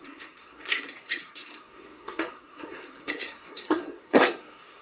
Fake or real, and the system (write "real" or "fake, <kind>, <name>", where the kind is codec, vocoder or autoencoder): fake, codec, SNAC